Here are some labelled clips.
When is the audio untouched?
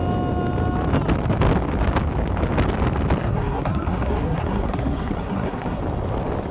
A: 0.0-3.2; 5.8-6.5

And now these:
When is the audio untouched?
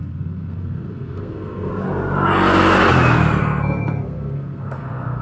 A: 1.7-3.4